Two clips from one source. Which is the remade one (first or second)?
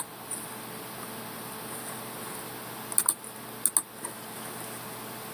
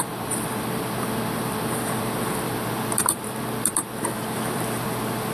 second